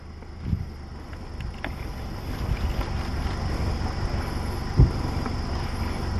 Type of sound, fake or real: real